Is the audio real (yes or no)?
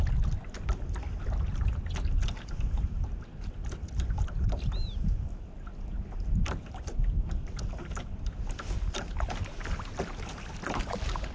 yes